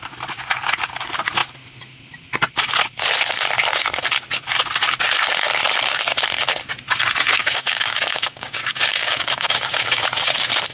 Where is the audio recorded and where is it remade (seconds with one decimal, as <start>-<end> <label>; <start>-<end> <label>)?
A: 0.0-7.4 recorded; 7.4-10.0 remade; 10.0-10.7 recorded